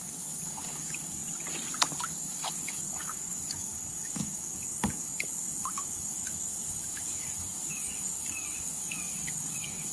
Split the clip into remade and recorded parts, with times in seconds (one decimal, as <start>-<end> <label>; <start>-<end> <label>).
0.0-1.2 remade; 1.2-2.1 recorded; 2.1-9.9 remade